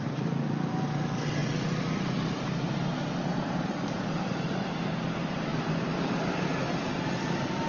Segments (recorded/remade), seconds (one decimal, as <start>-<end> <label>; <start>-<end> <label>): 0.0-3.3 recorded; 3.3-4.9 remade; 4.9-7.7 recorded